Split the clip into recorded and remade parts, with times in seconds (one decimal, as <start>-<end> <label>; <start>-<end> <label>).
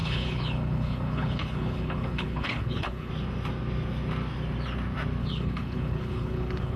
0.0-3.1 remade; 3.1-5.2 recorded; 5.2-6.8 remade